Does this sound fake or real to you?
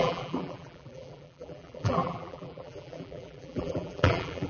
fake